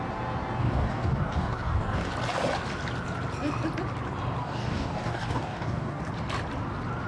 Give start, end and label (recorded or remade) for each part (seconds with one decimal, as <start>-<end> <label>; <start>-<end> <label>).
0.0-0.6 recorded; 0.6-2.1 remade; 2.1-4.4 recorded; 4.4-6.0 remade; 6.0-7.1 recorded